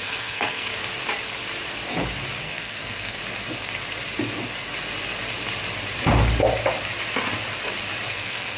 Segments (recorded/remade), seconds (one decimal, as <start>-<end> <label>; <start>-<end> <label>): 0.0-0.7 remade; 0.7-2.4 recorded; 2.4-3.2 remade; 3.2-8.1 recorded; 8.1-8.6 remade